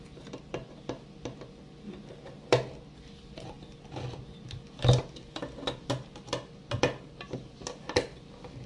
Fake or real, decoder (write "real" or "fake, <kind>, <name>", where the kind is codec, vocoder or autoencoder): real